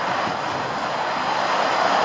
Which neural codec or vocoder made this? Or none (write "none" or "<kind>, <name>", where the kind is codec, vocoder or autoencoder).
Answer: none